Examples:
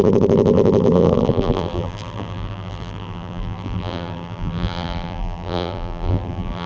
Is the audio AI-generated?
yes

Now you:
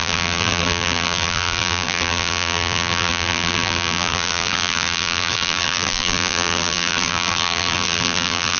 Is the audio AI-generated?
yes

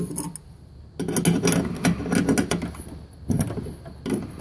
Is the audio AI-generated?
no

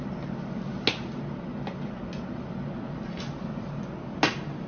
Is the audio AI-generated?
no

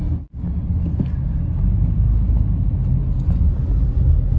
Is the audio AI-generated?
no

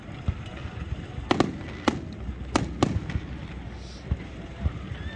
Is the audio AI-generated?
no